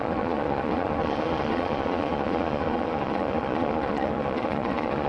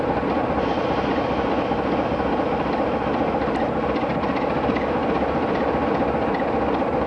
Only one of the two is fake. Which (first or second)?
first